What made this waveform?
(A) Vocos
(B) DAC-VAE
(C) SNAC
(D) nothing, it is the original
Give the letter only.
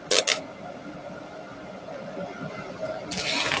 D